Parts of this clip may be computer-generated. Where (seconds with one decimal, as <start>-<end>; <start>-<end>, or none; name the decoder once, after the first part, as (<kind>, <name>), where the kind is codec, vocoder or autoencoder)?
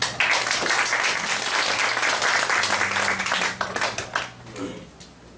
none